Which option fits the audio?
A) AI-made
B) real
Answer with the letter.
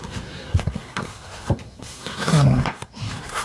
A